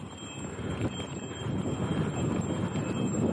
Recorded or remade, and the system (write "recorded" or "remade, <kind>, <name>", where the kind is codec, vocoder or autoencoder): recorded